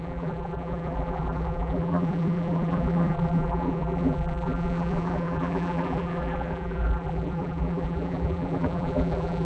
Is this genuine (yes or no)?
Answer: no